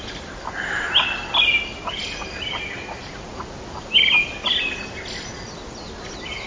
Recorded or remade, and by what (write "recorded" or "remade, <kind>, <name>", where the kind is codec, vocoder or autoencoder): recorded